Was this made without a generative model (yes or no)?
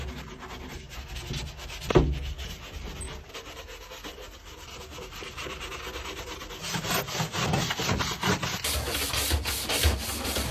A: yes